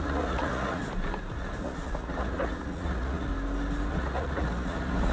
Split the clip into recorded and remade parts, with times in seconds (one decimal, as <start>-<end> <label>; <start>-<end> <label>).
0.0-0.8 remade; 0.8-1.6 recorded; 1.6-3.3 remade; 3.3-3.9 recorded; 3.9-5.1 remade